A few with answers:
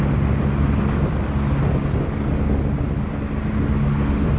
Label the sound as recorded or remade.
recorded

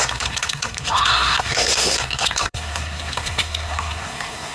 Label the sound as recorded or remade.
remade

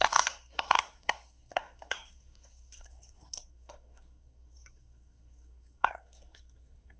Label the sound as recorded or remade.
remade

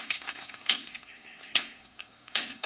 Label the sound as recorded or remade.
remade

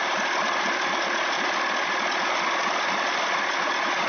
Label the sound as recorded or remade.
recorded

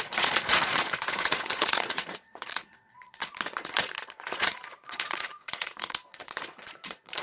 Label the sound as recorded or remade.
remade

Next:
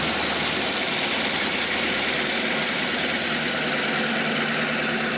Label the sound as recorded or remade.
recorded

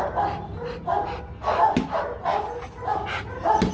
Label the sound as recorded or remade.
recorded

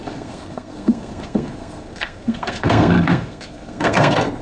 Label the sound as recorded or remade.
remade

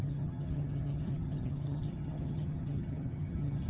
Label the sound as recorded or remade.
remade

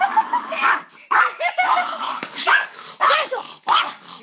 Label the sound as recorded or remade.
remade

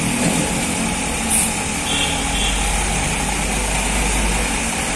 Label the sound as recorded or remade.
recorded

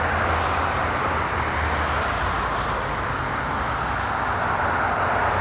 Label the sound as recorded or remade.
recorded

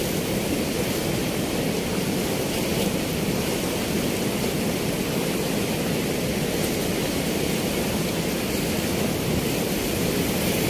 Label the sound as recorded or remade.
recorded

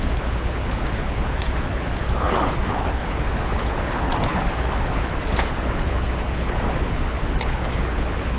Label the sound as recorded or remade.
remade